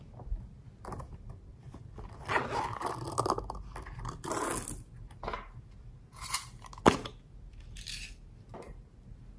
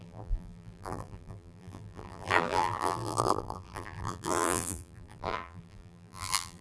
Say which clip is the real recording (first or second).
first